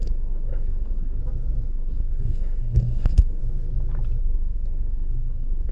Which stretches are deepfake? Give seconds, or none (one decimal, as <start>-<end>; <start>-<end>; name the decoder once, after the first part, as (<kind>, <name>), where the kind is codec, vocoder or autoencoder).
0.0-1.2 (codec, SNAC); 1.7-3.4; 4.2-5.7